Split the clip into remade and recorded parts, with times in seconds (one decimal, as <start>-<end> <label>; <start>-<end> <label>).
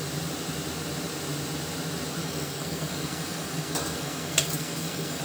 0.0-2.2 recorded; 2.2-5.2 remade